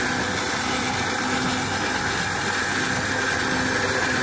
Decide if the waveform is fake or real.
real